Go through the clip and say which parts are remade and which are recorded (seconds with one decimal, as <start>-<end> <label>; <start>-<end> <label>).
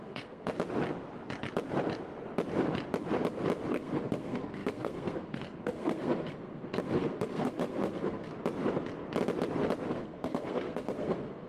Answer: 0.0-0.5 remade; 0.5-3.7 recorded; 3.7-8.3 remade; 8.3-9.9 recorded; 9.9-11.5 remade